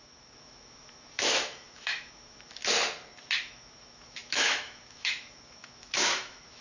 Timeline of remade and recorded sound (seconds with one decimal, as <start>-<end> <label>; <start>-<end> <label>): 0.0-2.6 remade; 2.6-3.4 recorded; 3.4-6.6 remade